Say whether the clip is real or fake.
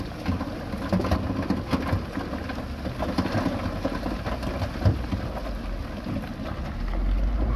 real